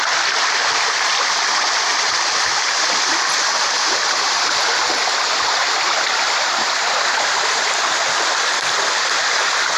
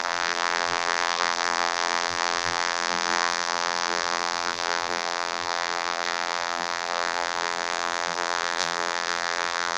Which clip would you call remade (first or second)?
second